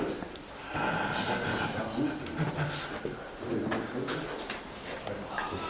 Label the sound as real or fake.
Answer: real